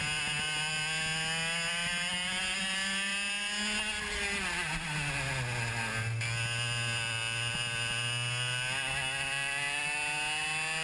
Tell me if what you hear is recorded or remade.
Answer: recorded